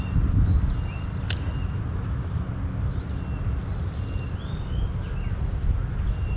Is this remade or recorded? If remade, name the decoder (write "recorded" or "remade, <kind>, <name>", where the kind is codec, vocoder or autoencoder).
recorded